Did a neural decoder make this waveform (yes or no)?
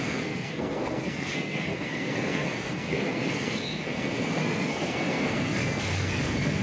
yes